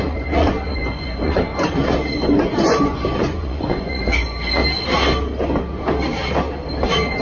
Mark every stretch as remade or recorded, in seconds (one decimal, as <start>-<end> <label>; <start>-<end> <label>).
0.0-1.5 remade; 1.5-2.5 recorded; 2.5-4.6 remade; 4.6-7.2 recorded